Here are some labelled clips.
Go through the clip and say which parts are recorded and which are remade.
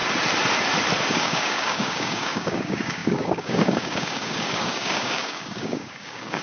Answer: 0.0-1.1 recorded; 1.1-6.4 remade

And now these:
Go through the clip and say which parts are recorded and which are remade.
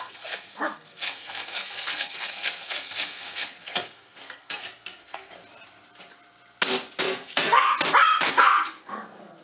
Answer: 0.0-5.4 remade; 5.4-7.0 recorded; 7.0-7.7 remade; 7.7-8.3 recorded; 8.3-9.4 remade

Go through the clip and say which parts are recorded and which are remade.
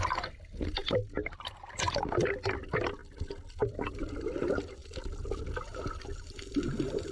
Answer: 0.0-7.1 recorded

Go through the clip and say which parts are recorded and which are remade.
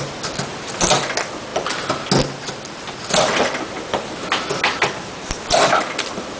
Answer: 0.0-6.4 recorded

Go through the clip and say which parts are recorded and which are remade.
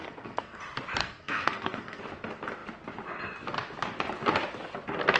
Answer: 0.0-0.6 remade; 0.6-1.0 recorded; 1.0-2.0 remade; 2.0-5.2 recorded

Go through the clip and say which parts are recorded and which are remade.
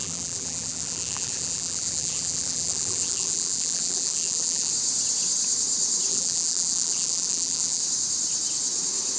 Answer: 0.0-4.7 remade; 4.7-6.1 recorded; 6.1-7.8 remade; 7.8-9.2 recorded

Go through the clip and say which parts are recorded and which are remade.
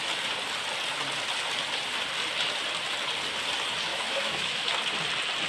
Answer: 0.0-3.9 recorded; 3.9-4.7 remade; 4.7-5.5 recorded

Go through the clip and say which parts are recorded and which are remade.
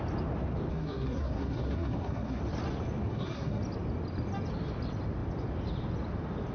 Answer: 0.0-0.7 recorded; 0.7-2.4 remade; 2.4-3.1 recorded; 3.1-3.6 remade; 3.6-6.5 recorded